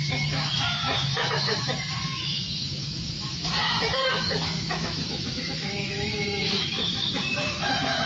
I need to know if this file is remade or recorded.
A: remade